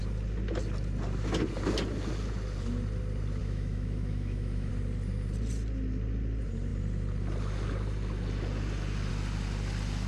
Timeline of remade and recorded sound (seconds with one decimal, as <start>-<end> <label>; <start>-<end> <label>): 0.0-3.4 recorded; 3.4-4.7 remade; 4.7-10.1 recorded